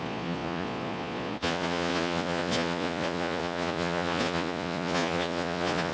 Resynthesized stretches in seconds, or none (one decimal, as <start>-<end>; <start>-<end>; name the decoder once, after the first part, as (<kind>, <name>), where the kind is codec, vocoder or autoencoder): 0.0-5.9 (vocoder, Vocos)